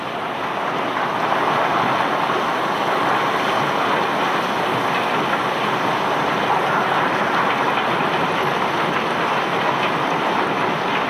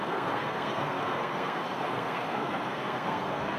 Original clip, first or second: first